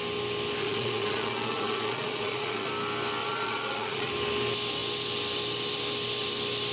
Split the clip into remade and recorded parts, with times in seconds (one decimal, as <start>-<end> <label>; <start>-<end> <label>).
0.0-0.6 recorded; 0.6-2.7 remade; 2.7-3.2 recorded; 3.2-4.1 remade; 4.1-6.7 recorded